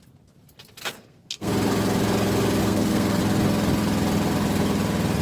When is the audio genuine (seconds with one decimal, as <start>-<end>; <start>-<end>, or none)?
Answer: 0.0-0.8; 1.5-2.6; 3.2-5.2